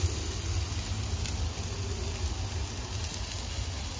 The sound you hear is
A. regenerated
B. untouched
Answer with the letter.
B